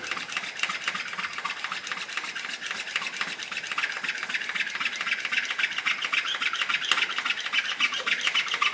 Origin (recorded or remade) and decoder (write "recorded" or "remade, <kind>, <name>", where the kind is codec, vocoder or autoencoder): recorded